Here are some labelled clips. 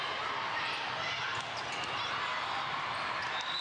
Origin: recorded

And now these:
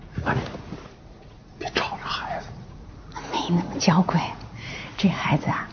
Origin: remade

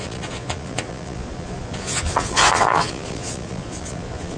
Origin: remade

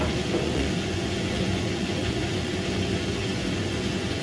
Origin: remade